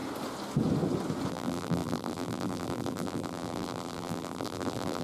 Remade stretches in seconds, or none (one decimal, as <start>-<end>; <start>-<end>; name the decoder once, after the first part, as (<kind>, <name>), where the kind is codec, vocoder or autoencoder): 1.3-5.0 (vocoder, BigVGAN v2)